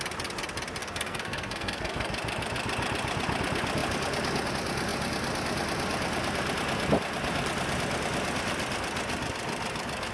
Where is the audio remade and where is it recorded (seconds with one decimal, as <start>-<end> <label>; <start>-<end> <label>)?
0.0-0.8 recorded; 0.8-2.1 remade; 2.1-10.1 recorded